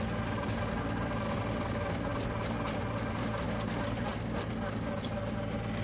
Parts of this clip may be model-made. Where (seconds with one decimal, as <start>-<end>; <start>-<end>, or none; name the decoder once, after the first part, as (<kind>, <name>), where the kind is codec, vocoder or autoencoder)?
none